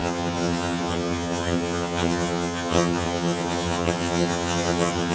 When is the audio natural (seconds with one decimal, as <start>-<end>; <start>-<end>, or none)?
none